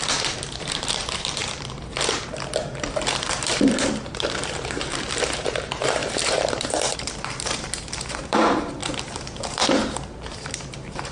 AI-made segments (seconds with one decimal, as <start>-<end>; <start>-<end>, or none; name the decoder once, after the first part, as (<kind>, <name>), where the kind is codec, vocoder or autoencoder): 0.0-11.1 (vocoder, BigVGAN v2)